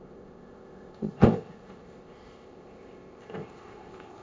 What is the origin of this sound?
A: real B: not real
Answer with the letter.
B